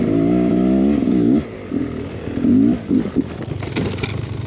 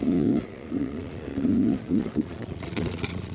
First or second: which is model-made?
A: second